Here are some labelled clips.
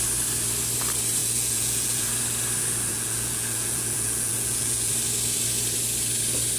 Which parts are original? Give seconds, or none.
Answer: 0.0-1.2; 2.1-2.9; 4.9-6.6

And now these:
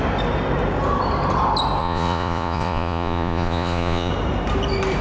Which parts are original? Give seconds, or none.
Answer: 0.0-1.8; 4.1-5.0

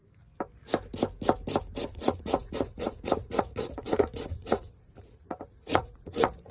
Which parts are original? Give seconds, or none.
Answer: 0.0-1.9